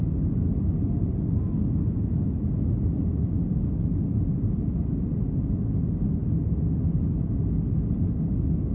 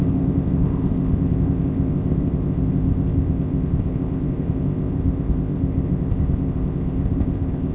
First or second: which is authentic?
first